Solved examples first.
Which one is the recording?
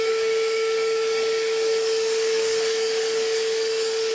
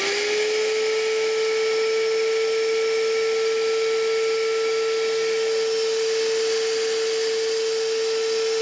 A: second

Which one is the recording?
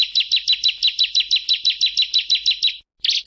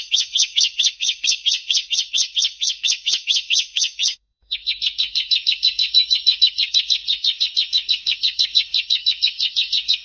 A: first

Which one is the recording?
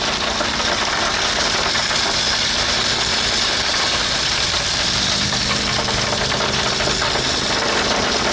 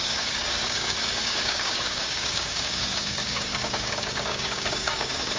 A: first